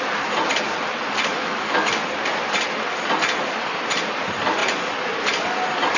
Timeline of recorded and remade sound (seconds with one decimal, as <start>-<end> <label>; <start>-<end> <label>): 0.0-1.3 recorded; 1.3-1.9 remade; 1.9-6.0 recorded